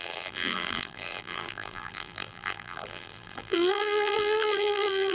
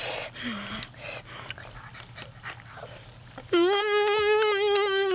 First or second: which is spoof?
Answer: first